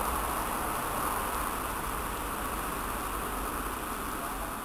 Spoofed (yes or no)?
no